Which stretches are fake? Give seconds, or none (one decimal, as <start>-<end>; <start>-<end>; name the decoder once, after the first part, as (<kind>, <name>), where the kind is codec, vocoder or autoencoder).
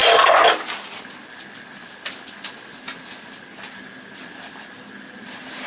none